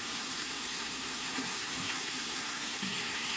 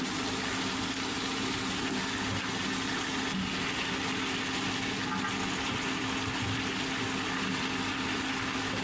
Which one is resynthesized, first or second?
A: first